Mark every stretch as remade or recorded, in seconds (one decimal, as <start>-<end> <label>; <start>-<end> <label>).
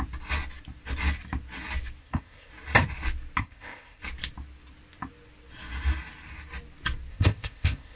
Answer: 0.0-2.0 recorded; 2.0-2.5 remade; 2.5-3.4 recorded; 3.4-4.0 remade; 4.0-7.1 recorded; 7.1-8.0 remade